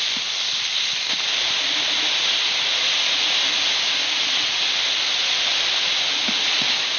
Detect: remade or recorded recorded